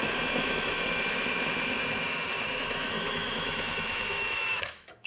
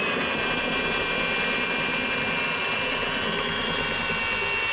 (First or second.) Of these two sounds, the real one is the second